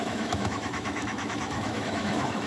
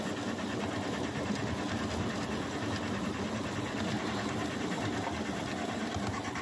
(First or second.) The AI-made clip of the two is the first